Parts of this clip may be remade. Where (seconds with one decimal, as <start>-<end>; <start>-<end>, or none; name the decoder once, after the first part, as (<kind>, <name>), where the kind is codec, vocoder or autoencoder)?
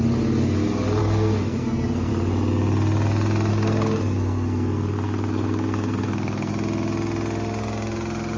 1.0-2.1 (codec, SNAC); 3.5-6.5